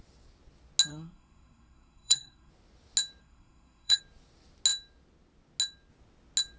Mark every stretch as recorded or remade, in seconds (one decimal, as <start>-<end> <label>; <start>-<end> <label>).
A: 0.0-0.9 recorded; 0.9-2.5 remade; 2.5-3.2 recorded; 3.2-4.0 remade; 4.0-6.6 recorded